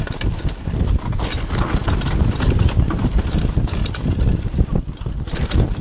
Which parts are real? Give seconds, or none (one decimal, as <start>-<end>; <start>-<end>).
0.0-1.8; 3.0-4.1